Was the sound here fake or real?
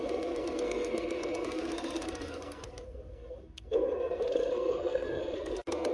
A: fake